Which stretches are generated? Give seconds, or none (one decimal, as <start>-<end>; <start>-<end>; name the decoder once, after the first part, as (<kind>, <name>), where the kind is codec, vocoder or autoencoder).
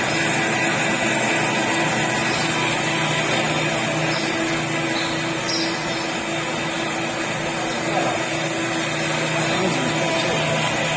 none